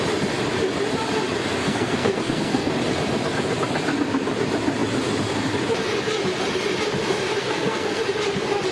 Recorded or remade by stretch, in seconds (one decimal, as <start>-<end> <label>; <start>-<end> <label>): 0.0-1.6 recorded; 1.6-2.7 remade; 2.7-7.4 recorded; 7.4-8.0 remade; 8.0-8.7 recorded

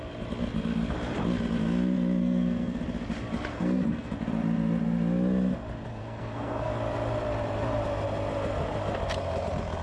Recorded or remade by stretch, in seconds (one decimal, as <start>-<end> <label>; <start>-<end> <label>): 0.0-2.2 recorded; 2.2-2.8 remade; 2.8-3.5 recorded; 3.5-4.1 remade; 4.1-5.9 recorded; 5.9-6.7 remade; 6.7-9.8 recorded

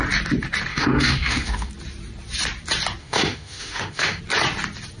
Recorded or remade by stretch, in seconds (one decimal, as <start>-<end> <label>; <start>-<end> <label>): 0.0-0.7 recorded; 0.7-1.7 remade; 1.7-3.0 recorded; 3.0-4.2 remade; 4.2-5.0 recorded

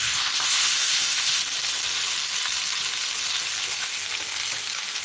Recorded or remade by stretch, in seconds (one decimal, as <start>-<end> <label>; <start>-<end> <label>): 0.0-1.4 remade; 1.4-3.6 recorded; 3.6-4.0 remade; 4.0-5.0 recorded